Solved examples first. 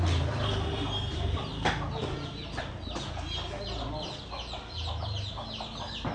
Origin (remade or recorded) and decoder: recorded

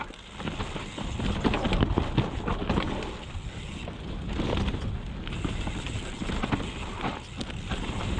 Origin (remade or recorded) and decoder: recorded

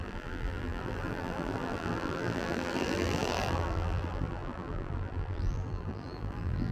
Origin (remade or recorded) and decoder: remade, vocoder, BigVGAN v2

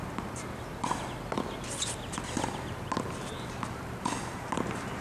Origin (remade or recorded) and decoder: recorded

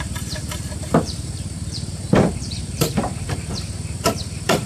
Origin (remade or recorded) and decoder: remade, vocoder, BigVGAN v2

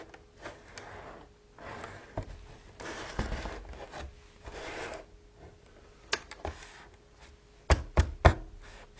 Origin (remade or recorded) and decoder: recorded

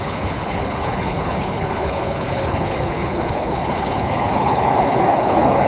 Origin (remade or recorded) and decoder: remade, codec, HILCodec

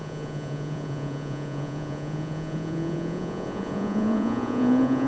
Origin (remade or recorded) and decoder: remade, vocoder, Vocos